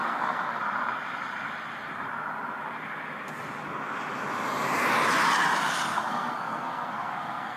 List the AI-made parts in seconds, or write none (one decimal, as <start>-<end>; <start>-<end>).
0.0-0.6; 5.9-7.6